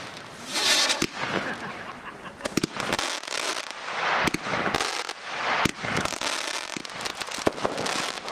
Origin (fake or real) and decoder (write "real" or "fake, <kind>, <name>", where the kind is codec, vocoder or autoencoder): real